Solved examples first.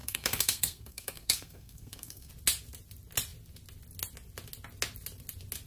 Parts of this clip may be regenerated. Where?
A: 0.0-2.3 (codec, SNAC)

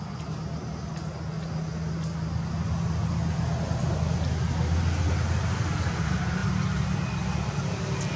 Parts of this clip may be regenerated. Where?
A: none

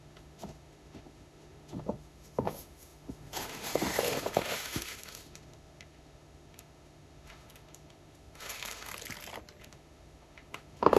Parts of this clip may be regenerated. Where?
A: 0.0-8.9 (autoencoder, DAC-VAE); 9.6-11.0

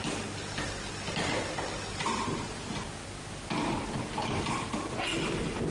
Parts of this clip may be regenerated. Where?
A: none

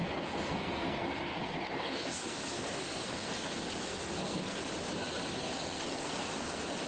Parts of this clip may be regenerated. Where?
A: 0.0-4.6 (codec, SNAC); 5.3-6.9

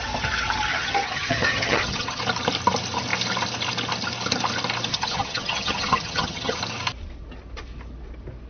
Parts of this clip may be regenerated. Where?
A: 0.7-2.2 (vocoder, HiFi-GAN); 4.9-6.6

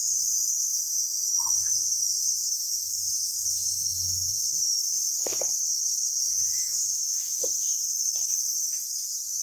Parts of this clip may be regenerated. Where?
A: 0.0-5.3 (autoencoder, DAC-VAE); 6.2-7.7

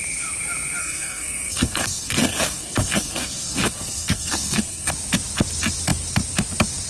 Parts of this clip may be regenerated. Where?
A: 0.8-4.9 (codec, SNAC)